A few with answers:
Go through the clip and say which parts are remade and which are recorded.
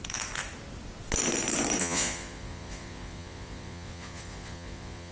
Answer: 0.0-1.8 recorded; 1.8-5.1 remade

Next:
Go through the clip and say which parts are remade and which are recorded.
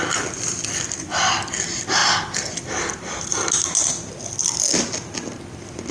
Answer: 0.0-5.9 recorded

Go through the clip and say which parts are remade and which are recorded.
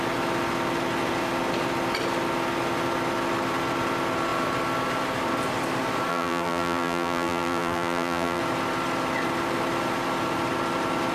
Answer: 0.0-6.1 recorded; 6.1-8.4 remade; 8.4-11.1 recorded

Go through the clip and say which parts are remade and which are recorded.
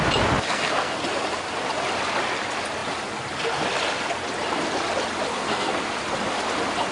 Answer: 0.0-0.5 recorded; 0.5-1.0 remade; 1.0-5.3 recorded; 5.3-5.8 remade; 5.8-6.9 recorded